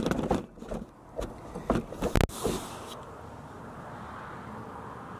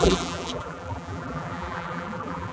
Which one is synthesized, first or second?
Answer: second